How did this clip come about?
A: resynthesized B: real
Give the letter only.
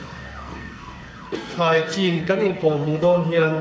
A